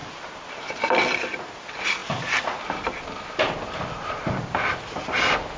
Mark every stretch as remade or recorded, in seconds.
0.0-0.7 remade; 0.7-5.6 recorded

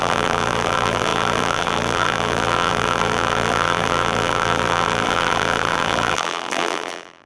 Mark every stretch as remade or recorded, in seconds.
0.0-7.3 remade

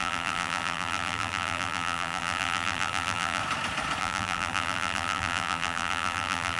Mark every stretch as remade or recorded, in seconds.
0.0-3.4 remade; 3.4-4.0 recorded; 4.0-6.6 remade

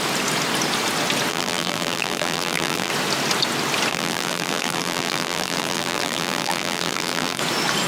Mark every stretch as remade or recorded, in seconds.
0.0-1.3 recorded; 1.3-2.9 remade; 2.9-3.9 recorded; 3.9-7.4 remade; 7.4-7.9 recorded

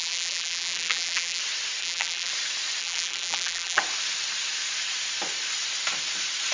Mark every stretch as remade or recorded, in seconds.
0.0-1.4 remade; 1.4-1.8 recorded; 1.8-2.3 remade; 2.3-2.8 recorded; 2.8-3.8 remade; 3.8-6.5 recorded

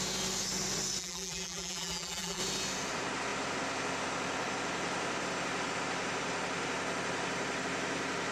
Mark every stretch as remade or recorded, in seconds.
0.0-1.0 recorded; 1.0-2.4 remade; 2.4-8.3 recorded

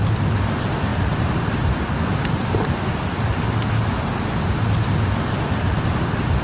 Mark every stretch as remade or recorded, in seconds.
0.0-6.4 recorded

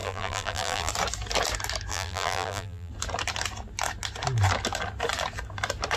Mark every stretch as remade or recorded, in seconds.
0.0-0.9 remade; 0.9-1.9 recorded; 1.9-2.9 remade; 2.9-6.0 recorded